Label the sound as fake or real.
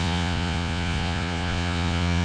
fake